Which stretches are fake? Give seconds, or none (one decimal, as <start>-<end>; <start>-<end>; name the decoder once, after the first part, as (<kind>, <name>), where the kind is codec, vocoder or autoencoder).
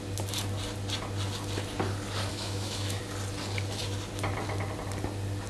2.3-3.0 (autoencoder, DAC-VAE)